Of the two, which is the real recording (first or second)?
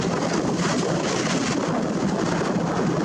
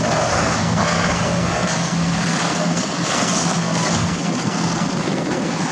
first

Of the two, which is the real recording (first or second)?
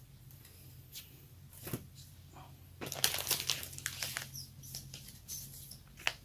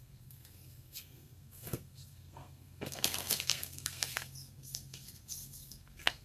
first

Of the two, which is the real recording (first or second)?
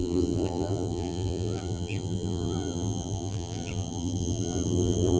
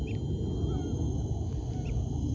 second